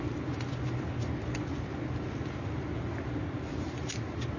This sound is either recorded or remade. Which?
recorded